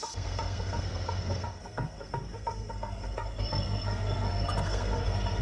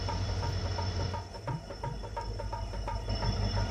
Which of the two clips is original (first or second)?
second